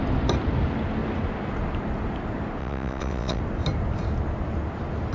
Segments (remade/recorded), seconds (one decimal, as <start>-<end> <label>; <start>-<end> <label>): 0.0-2.6 recorded; 2.6-3.4 remade; 3.4-5.1 recorded